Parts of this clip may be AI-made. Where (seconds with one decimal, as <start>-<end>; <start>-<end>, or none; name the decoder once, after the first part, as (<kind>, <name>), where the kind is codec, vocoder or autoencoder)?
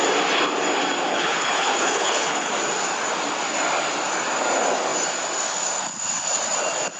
1.1-2.5 (codec, HILCodec)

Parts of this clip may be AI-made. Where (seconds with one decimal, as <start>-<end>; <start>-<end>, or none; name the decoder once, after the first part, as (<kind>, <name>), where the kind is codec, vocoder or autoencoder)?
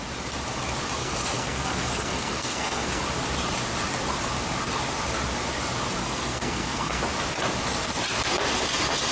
1.0-3.0 (codec, SNAC); 6.0-7.0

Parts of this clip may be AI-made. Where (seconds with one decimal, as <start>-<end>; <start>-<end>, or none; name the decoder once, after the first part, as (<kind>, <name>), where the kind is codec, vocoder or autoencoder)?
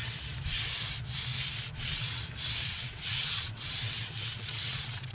1.8-2.2 (vocoder, WaveNeXt); 2.7-5.1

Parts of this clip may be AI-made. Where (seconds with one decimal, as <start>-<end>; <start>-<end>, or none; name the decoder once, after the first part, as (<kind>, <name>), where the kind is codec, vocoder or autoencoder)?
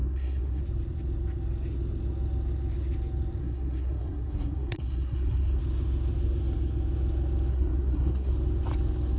0.0-0.6 (codec, SNAC); 3.4-5.6; 7.5-8.3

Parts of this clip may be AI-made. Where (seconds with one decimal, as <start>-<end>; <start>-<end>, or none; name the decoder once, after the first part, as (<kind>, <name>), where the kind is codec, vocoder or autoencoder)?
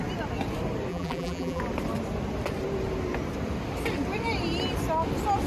0.9-1.6 (vocoder, BigVGAN v2)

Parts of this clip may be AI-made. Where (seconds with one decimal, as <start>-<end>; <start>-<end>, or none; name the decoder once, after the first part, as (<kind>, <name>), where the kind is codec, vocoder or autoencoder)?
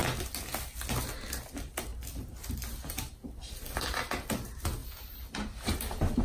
none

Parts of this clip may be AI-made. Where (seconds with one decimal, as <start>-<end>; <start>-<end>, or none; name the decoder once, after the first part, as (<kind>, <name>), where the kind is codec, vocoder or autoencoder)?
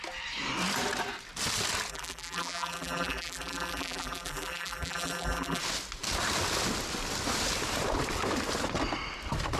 1.9-5.6 (vocoder, BigVGAN v2)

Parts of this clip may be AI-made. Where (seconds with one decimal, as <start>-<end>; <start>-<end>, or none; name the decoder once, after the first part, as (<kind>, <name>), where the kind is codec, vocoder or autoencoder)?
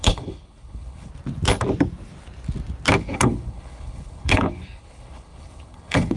0.0-1.1 (codec, HILCodec); 3.0-6.2